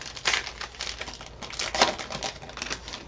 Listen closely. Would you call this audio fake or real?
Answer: real